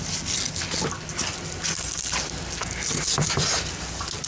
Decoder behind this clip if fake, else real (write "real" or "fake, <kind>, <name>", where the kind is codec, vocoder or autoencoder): real